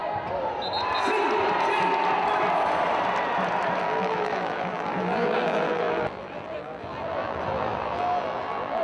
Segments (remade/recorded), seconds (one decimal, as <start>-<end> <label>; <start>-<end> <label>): 0.0-3.8 recorded; 3.8-8.8 remade